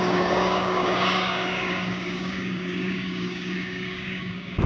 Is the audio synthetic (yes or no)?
yes